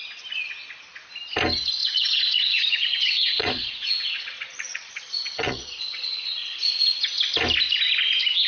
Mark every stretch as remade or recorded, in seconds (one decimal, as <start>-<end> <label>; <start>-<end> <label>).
0.0-1.8 recorded; 1.8-6.8 remade; 6.8-8.5 recorded